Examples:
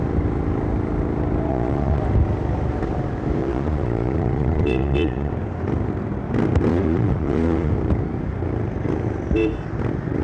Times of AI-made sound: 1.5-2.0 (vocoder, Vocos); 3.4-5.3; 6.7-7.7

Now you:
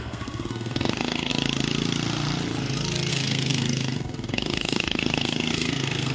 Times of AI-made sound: 0.0-1.3 (codec, SNAC); 3.1-6.1

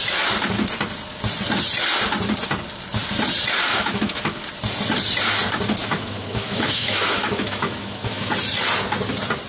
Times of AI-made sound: 3.7-4.4 (autoencoder, DAC-VAE); 5.8-8.3